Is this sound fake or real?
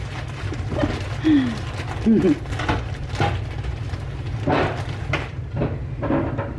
real